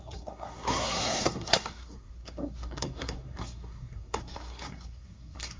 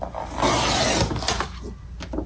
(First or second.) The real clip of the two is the second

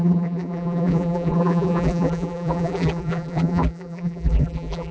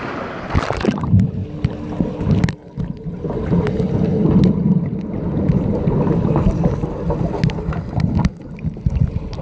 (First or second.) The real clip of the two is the second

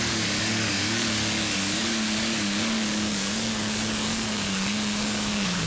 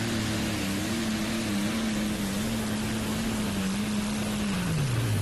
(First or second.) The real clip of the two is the second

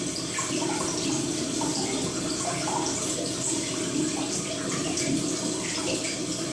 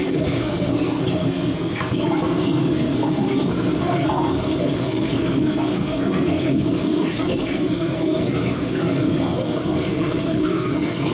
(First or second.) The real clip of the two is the first